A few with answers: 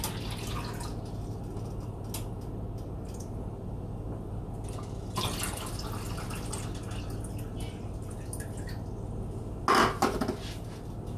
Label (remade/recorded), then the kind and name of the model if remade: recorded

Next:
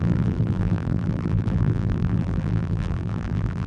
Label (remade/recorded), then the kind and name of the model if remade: remade, vocoder, BigVGAN v2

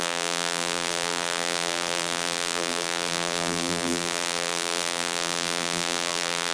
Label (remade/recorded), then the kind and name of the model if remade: remade, vocoder, BigVGAN v2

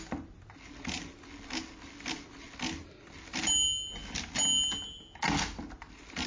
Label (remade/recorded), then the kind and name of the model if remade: recorded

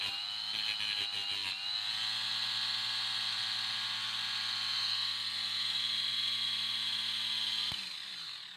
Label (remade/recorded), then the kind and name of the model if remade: recorded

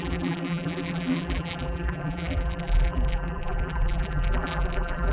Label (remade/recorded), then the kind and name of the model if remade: remade, vocoder, BigVGAN v2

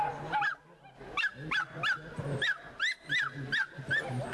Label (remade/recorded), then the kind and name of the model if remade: recorded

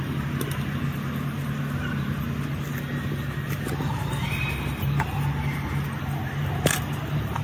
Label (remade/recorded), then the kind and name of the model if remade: recorded